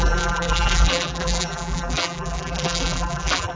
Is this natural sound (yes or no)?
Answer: no